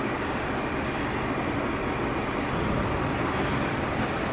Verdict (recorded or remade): recorded